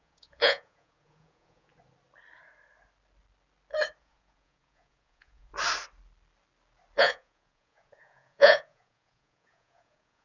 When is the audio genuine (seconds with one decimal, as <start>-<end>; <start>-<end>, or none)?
1.7-4.0; 5.5-7.0